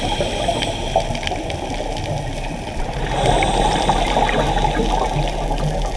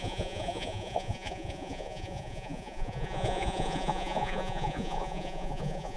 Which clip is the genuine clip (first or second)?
first